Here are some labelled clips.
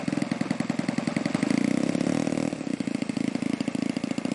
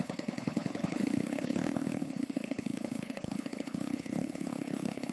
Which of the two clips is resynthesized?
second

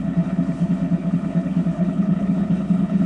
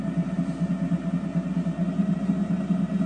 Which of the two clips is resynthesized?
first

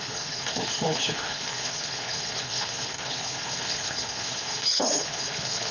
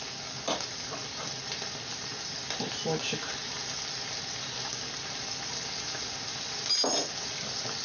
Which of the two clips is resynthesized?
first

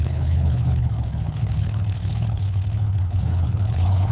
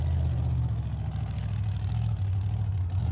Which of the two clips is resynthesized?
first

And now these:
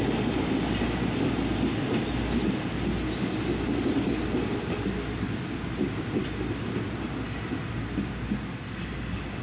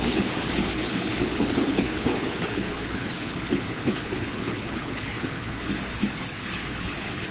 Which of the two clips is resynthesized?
second